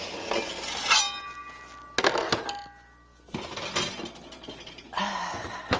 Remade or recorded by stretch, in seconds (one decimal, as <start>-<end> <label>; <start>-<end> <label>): 0.0-5.8 recorded

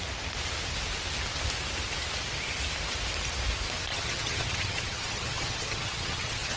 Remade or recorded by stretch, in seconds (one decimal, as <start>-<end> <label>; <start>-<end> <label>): 0.0-3.9 recorded; 3.9-6.6 remade

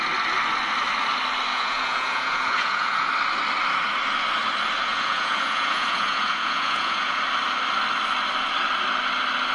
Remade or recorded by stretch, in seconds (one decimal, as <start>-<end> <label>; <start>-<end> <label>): 0.0-1.5 recorded; 1.5-3.1 remade; 3.1-4.8 recorded; 4.8-7.2 remade; 7.2-9.5 recorded

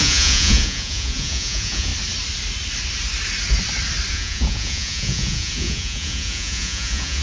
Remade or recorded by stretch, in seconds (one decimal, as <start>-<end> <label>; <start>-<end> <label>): 0.0-1.9 remade; 1.9-4.1 recorded; 4.1-7.2 remade

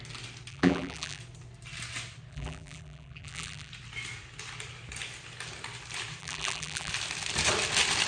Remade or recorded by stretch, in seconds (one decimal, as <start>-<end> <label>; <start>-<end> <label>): 0.0-0.5 recorded; 0.5-1.2 remade; 1.2-2.3 recorded; 2.3-3.7 remade; 3.7-6.2 recorded; 6.2-6.9 remade; 6.9-8.1 recorded